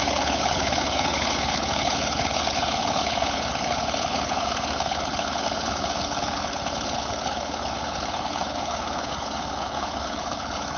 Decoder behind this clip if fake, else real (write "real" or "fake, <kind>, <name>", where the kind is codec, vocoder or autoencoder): fake, codec, HILCodec